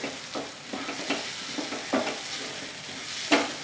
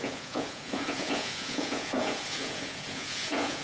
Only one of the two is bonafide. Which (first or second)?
first